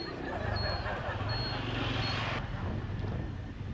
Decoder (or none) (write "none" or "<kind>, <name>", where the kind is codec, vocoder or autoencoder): none